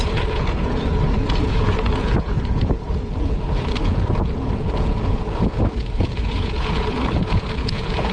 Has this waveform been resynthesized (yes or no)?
yes